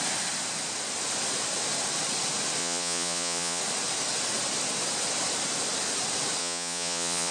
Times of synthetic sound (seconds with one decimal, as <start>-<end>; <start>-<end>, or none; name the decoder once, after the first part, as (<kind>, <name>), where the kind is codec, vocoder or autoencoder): 2.6-3.6 (vocoder, Vocos); 6.4-7.3